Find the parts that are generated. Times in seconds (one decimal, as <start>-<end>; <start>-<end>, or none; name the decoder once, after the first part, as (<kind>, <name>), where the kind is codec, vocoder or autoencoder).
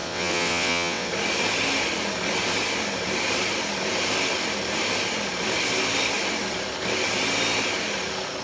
0.0-1.1 (vocoder, WaveNeXt)